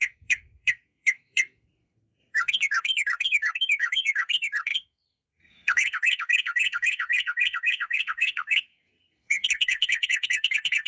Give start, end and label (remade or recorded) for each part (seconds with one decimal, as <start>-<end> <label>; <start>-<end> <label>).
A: 0.0-10.9 remade